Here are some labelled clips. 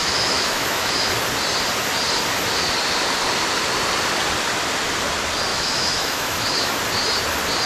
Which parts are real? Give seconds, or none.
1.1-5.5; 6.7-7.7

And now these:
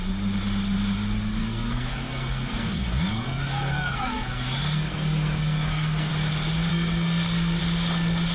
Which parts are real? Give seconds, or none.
0.0-1.4; 6.1-6.7; 7.6-8.3

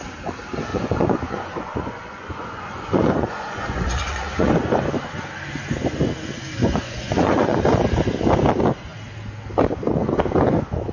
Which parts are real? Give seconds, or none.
0.0-0.7; 4.5-6.6; 7.6-10.9

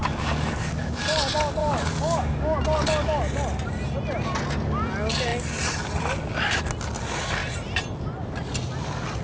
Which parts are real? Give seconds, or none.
1.0-1.6; 2.6-9.2